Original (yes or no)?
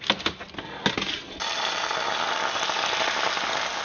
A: yes